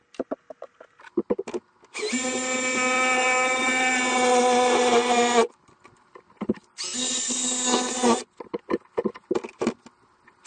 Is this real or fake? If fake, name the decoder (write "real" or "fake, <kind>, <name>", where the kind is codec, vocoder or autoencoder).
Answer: real